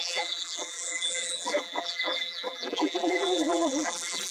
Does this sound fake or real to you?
fake